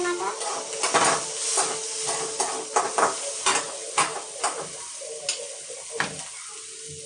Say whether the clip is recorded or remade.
recorded